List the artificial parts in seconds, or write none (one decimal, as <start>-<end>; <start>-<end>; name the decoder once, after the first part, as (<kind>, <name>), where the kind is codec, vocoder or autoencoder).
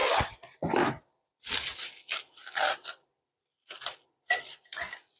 none